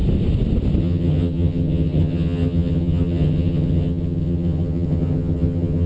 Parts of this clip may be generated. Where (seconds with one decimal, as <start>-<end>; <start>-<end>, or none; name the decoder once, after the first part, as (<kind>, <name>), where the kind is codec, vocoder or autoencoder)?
0.8-5.9 (vocoder, HiFi-GAN)